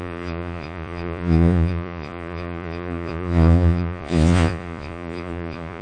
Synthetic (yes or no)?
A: yes